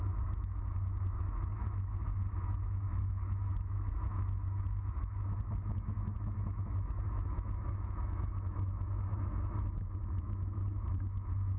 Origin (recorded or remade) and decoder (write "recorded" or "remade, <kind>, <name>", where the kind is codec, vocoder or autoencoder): remade, autoencoder, DAC-VAE